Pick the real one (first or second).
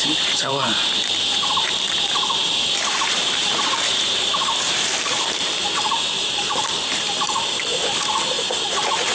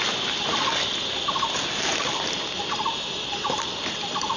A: second